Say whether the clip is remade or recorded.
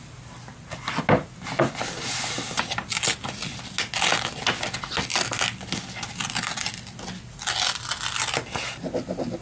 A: recorded